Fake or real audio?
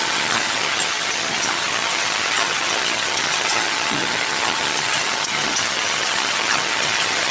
fake